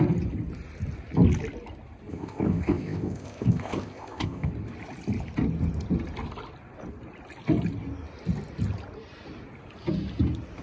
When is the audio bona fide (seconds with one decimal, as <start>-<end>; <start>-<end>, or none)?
0.0-2.1; 4.5-10.6